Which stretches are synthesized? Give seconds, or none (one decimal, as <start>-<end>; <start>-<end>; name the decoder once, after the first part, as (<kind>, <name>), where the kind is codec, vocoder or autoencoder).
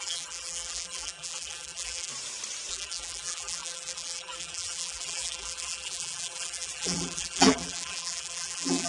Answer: 0.0-2.1 (vocoder, BigVGAN v2); 2.7-8.9